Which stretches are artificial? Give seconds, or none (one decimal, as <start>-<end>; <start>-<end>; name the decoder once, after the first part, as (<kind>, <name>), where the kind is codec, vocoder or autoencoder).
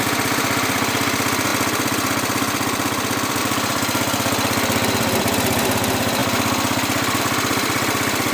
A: 0.0-8.3 (vocoder, BigVGAN v2)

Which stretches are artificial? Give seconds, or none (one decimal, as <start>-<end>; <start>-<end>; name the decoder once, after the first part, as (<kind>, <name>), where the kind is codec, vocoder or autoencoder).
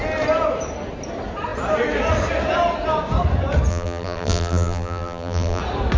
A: 3.7-5.6 (vocoder, BigVGAN v2)